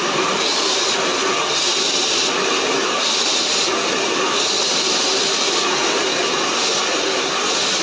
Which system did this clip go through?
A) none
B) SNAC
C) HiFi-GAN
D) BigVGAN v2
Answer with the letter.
A